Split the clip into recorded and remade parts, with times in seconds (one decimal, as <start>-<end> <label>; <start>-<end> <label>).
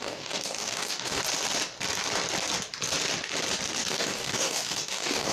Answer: 0.0-1.2 remade; 1.2-3.9 recorded; 3.9-5.3 remade